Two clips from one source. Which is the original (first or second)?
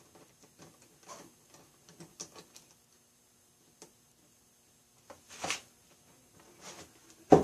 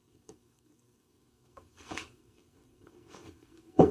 first